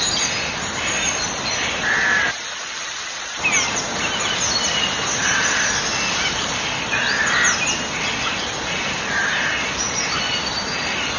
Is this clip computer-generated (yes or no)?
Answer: no